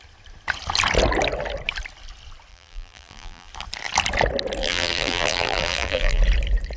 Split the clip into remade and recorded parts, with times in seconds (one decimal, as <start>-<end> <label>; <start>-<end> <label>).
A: 0.0-2.5 recorded; 2.5-3.5 remade; 3.5-4.6 recorded; 4.6-6.2 remade; 6.2-6.8 recorded

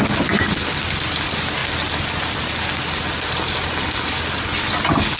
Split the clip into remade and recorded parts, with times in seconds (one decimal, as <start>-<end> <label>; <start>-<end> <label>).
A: 0.0-5.2 recorded

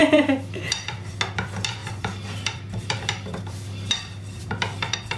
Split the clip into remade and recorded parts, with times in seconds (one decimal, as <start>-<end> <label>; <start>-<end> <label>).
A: 0.0-1.1 remade; 1.1-1.8 recorded; 1.8-5.2 remade

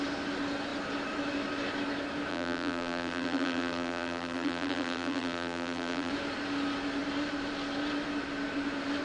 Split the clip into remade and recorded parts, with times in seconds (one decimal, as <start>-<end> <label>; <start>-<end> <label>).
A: 0.0-2.3 recorded; 2.3-6.1 remade; 6.1-9.0 recorded

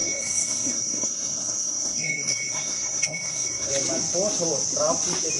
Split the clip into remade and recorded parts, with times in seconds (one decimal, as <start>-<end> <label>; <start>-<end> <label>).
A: 0.0-3.7 remade; 3.7-5.4 recorded

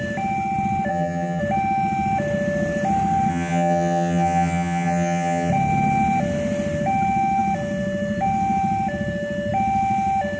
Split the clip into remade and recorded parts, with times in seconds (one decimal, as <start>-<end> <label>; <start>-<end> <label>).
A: 0.0-0.9 recorded; 0.9-1.4 remade; 1.4-3.3 recorded; 3.3-5.5 remade; 5.5-10.4 recorded

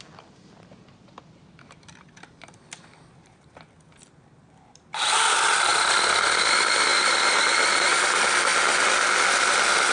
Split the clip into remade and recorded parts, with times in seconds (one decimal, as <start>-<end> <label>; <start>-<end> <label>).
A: 0.0-9.9 recorded

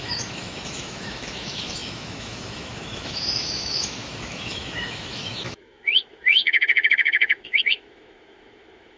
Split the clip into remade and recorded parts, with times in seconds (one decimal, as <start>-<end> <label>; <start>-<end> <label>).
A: 0.0-9.0 remade